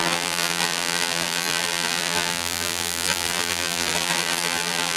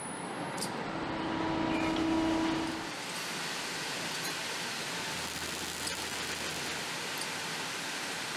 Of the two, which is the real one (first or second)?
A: second